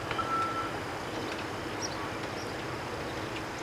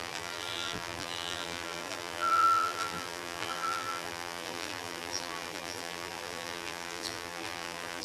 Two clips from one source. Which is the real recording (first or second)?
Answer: first